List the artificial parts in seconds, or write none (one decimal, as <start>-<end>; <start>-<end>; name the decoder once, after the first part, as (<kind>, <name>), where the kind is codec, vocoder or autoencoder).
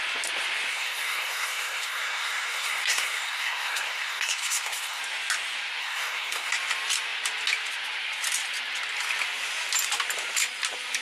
0.7-5.0 (codec, SNAC); 5.8-6.5